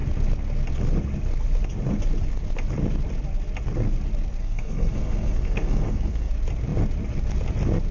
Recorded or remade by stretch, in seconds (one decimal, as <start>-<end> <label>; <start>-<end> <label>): 0.0-4.4 recorded; 4.4-6.3 remade; 6.3-7.9 recorded